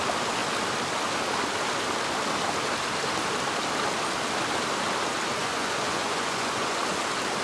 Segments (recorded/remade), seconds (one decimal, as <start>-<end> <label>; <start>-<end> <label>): 0.0-5.4 recorded; 5.4-6.8 remade; 6.8-7.4 recorded